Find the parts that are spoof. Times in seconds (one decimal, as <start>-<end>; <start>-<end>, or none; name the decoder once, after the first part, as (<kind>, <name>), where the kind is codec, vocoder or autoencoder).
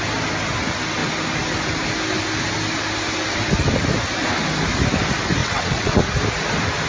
5.4-6.0 (vocoder, WaveNeXt)